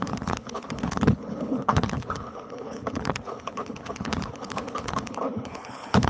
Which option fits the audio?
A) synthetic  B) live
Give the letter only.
A